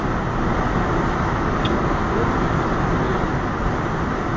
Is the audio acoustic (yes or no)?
yes